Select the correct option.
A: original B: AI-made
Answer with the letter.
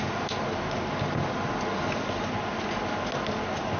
A